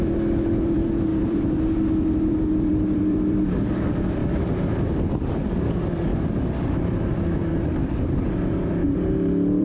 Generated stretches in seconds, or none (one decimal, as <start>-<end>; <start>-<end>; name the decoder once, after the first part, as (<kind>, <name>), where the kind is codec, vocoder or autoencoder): 0.0-4.2 (vocoder, BigVGAN v2); 5.3-9.6